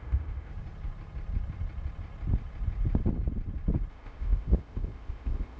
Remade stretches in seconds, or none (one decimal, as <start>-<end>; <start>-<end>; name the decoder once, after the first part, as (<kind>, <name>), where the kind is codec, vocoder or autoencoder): 0.0-0.5 (codec, ZipCodec); 3.9-5.6